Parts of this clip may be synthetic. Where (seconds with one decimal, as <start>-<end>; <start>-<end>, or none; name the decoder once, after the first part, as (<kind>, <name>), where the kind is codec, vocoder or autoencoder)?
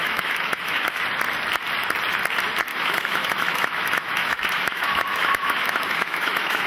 0.0-1.0 (autoencoder, DAC-VAE); 2.7-6.7